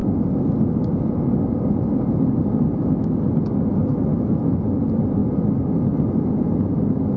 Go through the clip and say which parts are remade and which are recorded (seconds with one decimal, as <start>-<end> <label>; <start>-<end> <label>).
0.0-7.2 recorded